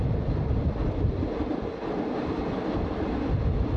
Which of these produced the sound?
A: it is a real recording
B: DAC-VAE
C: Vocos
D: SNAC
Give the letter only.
A